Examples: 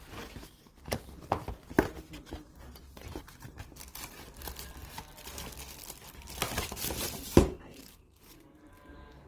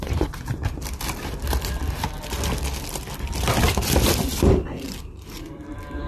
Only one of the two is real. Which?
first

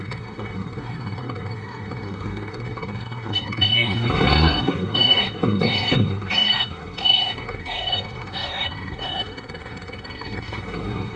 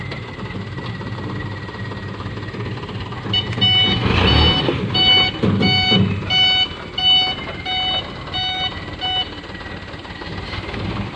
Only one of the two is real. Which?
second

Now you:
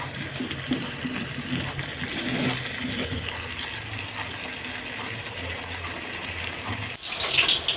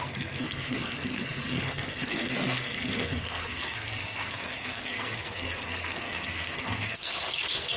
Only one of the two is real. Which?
first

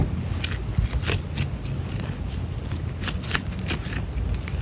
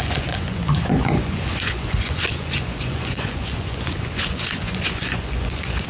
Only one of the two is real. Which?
first